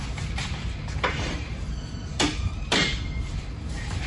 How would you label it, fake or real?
fake